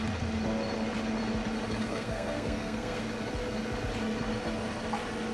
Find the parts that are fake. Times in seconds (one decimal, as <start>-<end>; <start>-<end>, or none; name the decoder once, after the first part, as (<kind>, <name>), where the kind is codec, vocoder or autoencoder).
1.8-3.0 (codec, SNAC)